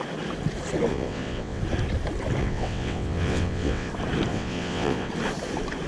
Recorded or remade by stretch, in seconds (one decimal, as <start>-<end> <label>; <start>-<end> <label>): 0.0-0.9 recorded; 0.9-1.6 remade; 1.6-2.4 recorded; 2.4-3.9 remade; 3.9-4.3 recorded; 4.3-5.1 remade; 5.1-5.9 recorded